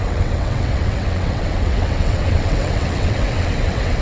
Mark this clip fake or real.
fake